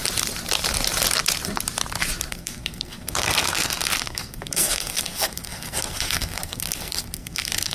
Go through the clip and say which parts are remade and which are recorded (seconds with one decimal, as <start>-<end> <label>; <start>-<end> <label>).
0.0-2.3 recorded; 2.3-7.7 remade